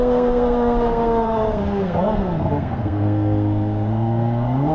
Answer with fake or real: fake